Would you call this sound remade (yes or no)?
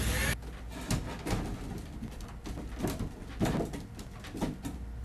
no